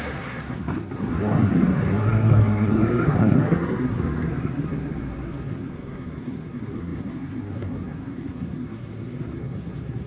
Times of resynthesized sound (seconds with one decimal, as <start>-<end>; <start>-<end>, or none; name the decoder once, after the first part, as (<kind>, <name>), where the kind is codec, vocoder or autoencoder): 0.0-10.1 (codec, SNAC)